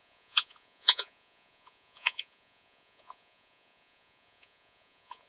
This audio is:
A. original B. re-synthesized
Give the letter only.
B